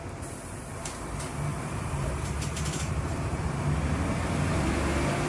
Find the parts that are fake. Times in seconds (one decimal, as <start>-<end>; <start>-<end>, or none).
1.5-3.4